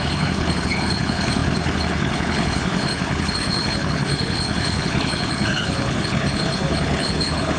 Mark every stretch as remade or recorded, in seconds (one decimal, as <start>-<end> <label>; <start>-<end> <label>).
0.0-7.6 remade